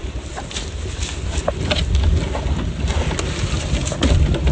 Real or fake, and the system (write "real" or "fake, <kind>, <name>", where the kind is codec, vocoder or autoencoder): real